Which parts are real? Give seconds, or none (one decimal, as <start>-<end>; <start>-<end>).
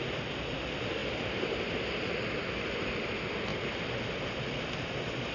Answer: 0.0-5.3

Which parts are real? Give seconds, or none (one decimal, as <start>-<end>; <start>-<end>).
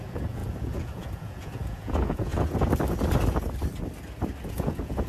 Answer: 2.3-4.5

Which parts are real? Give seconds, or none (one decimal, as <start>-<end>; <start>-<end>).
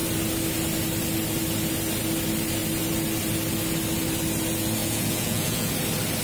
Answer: 0.0-4.8; 5.7-6.2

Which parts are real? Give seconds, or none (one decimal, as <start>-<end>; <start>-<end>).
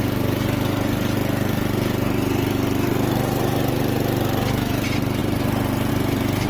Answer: 0.0-6.5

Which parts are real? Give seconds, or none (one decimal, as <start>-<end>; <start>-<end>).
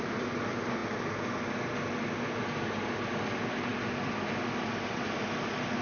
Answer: 0.0-5.8